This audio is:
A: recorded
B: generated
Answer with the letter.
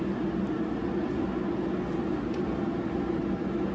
A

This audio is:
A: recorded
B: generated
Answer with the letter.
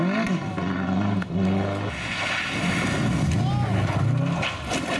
A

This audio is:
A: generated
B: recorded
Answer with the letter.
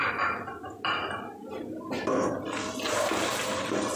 B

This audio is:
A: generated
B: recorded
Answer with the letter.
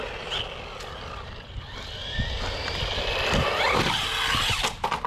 B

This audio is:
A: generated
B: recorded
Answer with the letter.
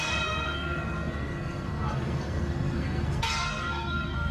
A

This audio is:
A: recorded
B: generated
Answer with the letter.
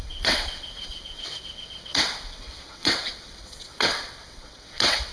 B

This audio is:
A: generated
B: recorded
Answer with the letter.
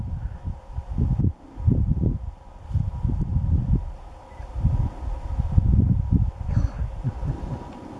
B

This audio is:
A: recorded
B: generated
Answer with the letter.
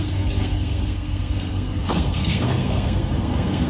B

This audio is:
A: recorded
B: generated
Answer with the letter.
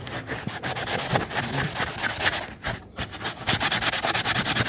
A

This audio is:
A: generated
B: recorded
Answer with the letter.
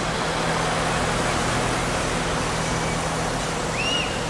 B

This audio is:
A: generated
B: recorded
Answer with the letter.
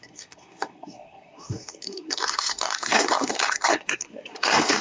A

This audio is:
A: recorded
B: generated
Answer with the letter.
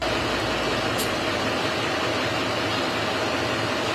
A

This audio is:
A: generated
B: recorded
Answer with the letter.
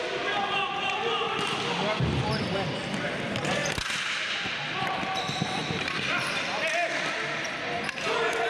B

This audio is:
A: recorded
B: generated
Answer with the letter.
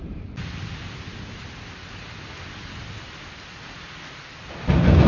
A